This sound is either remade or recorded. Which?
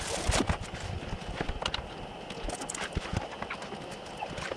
recorded